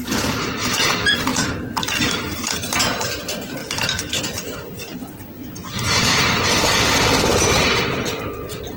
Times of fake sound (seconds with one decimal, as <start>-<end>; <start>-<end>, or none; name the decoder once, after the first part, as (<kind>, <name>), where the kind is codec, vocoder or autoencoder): 1.3-1.9 (autoencoder, DAC-VAE); 3.6-4.2